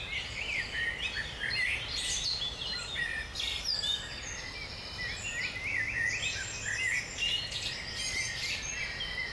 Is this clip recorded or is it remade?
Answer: recorded